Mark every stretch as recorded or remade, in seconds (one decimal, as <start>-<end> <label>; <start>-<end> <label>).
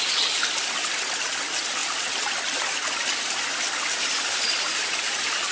0.0-5.5 recorded